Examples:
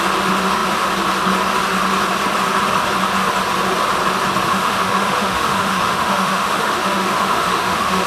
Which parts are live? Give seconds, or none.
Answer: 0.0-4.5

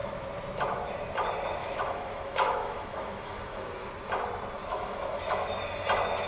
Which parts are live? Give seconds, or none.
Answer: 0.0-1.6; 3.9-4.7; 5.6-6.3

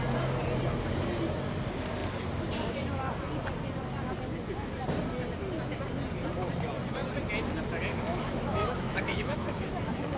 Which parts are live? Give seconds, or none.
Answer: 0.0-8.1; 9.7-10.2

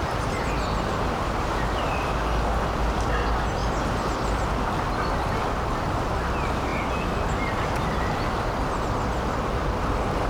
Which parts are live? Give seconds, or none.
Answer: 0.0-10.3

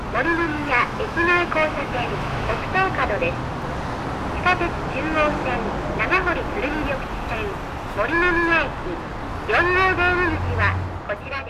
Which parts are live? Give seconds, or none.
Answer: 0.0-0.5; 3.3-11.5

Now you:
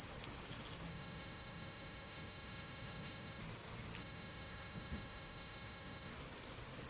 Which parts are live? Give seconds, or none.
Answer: 0.0-0.9; 3.4-4.0; 6.1-6.9

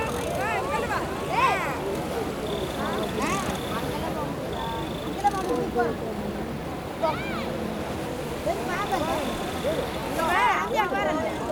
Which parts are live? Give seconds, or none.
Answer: 0.0-11.5